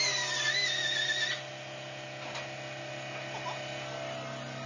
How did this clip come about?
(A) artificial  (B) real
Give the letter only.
B